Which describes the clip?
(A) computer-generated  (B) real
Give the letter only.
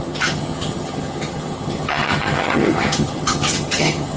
A